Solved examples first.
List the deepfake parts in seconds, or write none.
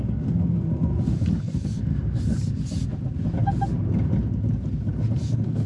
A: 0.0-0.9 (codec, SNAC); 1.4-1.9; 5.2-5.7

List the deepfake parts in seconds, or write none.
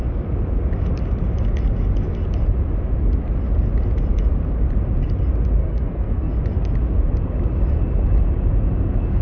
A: 5.6-6.3 (codec, SNAC)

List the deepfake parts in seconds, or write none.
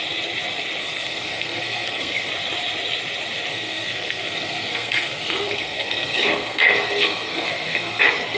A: 0.8-2.3 (codec, SNAC); 3.5-8.0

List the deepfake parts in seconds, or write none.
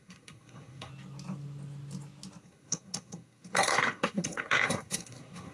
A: 0.0-0.9 (codec, SNAC); 2.4-5.5